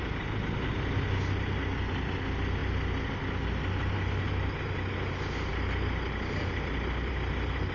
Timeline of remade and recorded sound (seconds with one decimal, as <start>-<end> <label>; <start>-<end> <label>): 0.0-7.7 recorded